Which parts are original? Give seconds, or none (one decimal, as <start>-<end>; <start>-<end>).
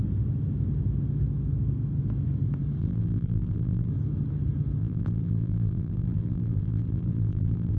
0.0-2.8; 3.9-4.8